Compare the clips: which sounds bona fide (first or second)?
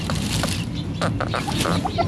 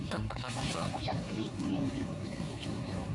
first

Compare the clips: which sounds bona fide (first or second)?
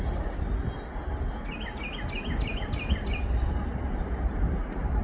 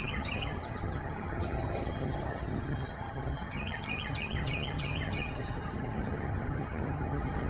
first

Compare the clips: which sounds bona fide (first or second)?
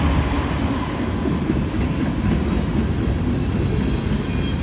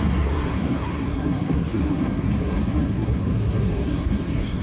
first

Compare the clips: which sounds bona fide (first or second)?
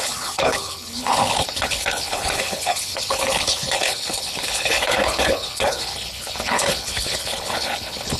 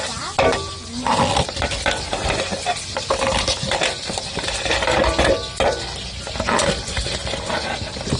second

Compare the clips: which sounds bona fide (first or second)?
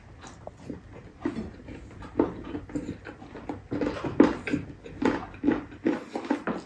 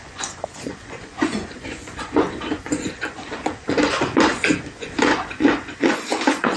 first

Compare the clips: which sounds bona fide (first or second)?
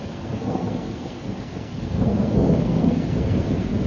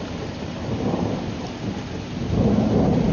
second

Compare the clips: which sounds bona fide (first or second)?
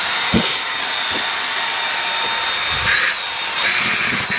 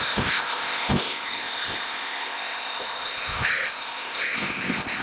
first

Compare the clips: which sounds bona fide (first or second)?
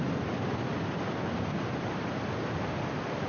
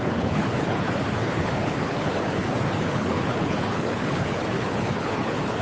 first